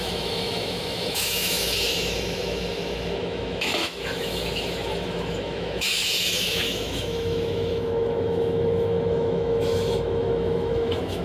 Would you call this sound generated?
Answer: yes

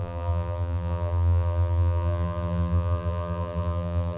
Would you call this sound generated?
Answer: yes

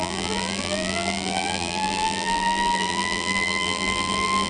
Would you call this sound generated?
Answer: yes